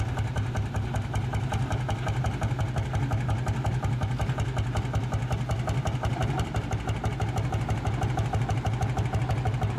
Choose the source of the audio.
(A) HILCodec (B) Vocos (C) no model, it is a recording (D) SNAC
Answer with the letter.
C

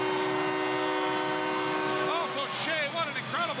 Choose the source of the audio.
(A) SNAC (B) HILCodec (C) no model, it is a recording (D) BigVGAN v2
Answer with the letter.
C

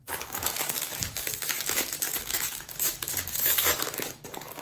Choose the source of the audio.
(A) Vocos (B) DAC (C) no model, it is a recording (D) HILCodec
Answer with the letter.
B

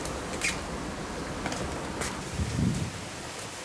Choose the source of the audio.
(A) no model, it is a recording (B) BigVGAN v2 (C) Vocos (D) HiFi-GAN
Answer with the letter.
A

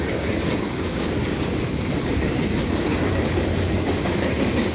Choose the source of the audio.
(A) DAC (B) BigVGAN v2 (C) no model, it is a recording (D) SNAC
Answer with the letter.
A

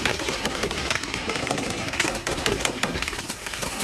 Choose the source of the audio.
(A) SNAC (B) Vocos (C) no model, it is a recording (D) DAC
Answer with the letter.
A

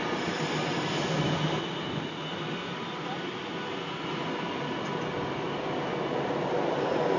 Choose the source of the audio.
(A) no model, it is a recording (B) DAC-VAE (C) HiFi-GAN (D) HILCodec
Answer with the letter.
A